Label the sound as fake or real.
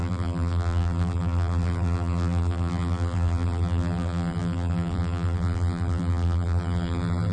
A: fake